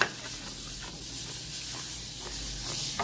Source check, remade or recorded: recorded